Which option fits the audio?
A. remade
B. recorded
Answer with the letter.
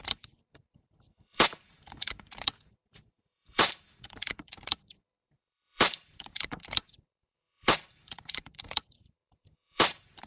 A